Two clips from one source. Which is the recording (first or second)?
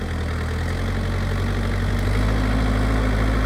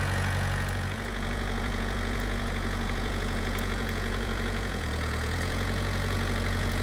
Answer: first